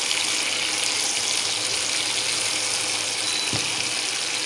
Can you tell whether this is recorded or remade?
recorded